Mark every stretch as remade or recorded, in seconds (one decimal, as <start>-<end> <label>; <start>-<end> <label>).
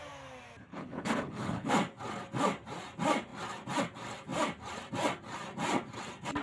0.0-0.6 recorded; 0.6-1.7 remade; 1.7-6.4 recorded